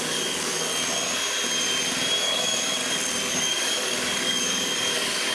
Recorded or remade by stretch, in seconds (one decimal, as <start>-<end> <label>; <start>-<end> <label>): 0.0-0.7 remade; 0.7-2.2 recorded; 2.2-2.8 remade; 2.8-3.3 recorded; 3.3-5.3 remade